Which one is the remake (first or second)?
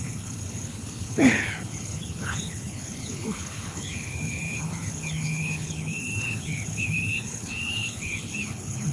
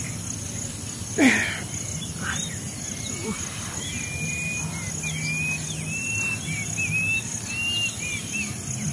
first